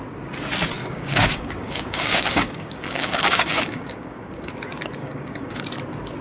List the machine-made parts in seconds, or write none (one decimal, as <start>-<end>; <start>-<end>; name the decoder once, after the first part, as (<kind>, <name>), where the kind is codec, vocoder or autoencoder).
0.8-4.5 (codec, DAC); 5.0-5.6